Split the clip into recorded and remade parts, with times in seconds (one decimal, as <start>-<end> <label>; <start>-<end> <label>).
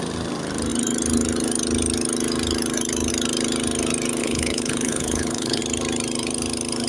0.0-4.2 recorded; 4.2-5.6 remade; 5.6-6.9 recorded